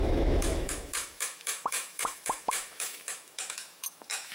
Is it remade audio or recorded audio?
remade